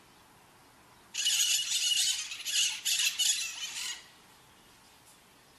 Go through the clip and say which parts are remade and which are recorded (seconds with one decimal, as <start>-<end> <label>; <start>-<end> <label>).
0.0-5.6 recorded